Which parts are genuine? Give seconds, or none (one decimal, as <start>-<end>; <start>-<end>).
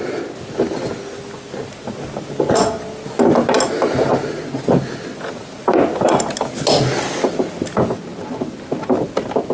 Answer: 0.0-9.5